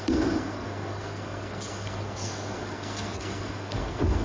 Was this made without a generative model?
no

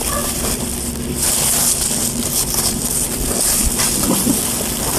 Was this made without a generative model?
no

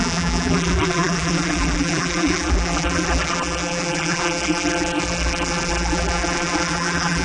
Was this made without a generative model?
no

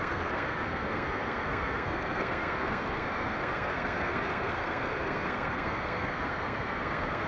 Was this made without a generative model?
no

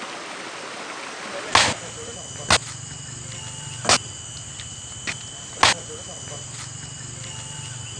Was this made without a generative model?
yes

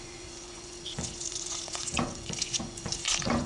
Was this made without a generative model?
no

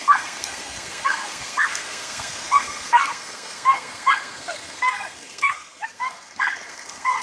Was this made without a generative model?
no